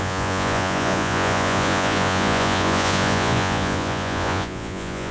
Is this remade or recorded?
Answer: remade